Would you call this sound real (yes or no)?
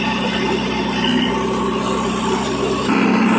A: yes